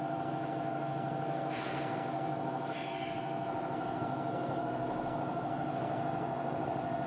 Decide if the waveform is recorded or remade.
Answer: remade